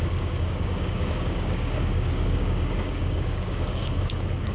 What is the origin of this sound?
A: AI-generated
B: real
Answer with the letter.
A